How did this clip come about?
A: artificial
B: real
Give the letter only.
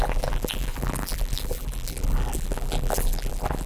A